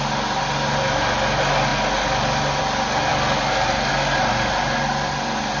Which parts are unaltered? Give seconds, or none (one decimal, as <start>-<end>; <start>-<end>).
0.0-5.6